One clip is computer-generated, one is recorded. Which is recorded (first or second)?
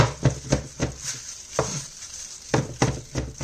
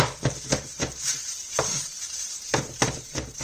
first